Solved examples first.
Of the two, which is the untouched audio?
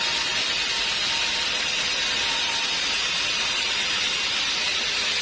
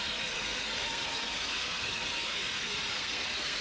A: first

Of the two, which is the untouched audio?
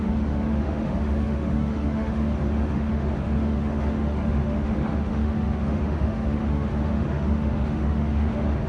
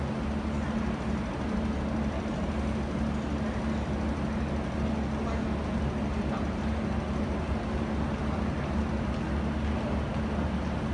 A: second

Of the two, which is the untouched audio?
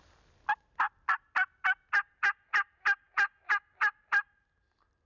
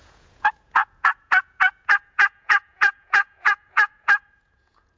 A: first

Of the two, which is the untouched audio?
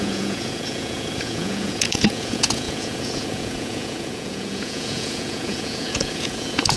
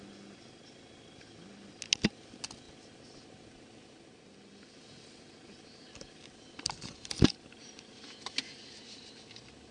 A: second